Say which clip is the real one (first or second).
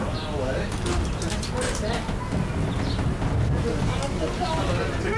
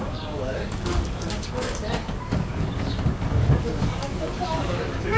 first